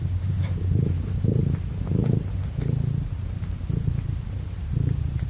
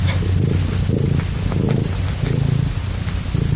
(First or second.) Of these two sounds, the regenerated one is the first